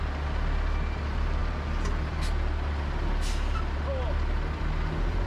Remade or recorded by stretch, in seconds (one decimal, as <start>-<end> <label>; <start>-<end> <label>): 0.0-5.3 recorded